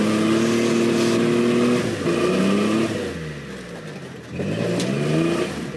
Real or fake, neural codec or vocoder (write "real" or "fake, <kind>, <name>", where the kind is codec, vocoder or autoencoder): real